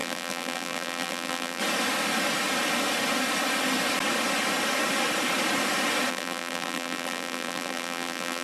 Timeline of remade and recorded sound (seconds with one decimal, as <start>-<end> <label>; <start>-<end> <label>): 0.0-1.6 remade; 1.6-6.1 recorded; 6.1-8.4 remade